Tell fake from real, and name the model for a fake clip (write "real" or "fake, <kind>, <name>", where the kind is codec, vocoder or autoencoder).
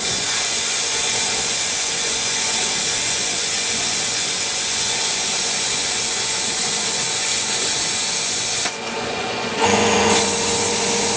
fake, vocoder, Vocos